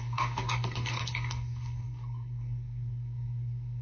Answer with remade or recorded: remade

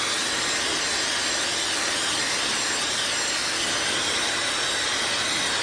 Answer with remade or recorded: recorded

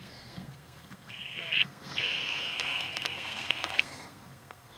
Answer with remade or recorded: remade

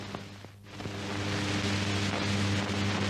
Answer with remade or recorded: recorded